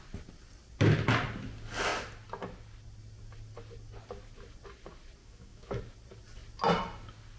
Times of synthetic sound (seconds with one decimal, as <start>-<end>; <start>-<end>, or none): 5.2-5.8